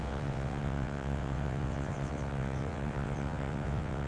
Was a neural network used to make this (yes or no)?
yes